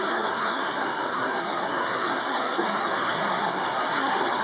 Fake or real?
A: fake